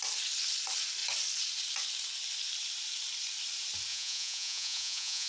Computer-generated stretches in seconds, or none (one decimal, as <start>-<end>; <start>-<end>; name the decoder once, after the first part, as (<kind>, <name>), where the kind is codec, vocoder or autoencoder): 3.9-5.3 (vocoder, Vocos)

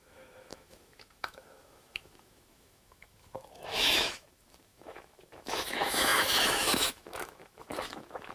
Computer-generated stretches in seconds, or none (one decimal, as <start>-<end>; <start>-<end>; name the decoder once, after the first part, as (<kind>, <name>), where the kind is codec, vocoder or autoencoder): 0.0-8.3 (autoencoder, DAC-VAE)

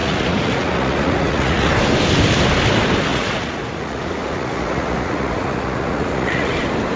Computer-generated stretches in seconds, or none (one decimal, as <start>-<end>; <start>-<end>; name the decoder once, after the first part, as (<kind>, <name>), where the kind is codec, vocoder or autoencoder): 0.0-1.7 (vocoder, Vocos); 3.1-6.5

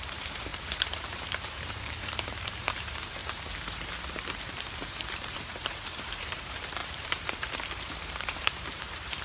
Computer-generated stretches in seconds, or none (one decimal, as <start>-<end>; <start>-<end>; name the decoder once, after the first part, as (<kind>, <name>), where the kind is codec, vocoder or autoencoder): 0.0-3.2 (vocoder, BigVGAN v2); 4.1-9.2

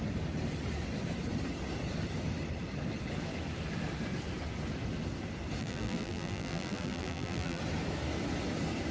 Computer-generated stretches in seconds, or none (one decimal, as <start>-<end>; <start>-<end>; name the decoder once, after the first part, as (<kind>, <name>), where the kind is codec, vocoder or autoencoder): 5.6-7.6 (vocoder, BigVGAN v2)